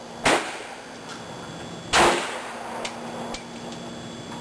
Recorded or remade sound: recorded